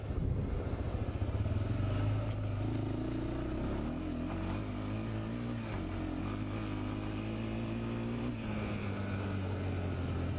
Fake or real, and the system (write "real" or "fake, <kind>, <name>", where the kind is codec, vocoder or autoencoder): real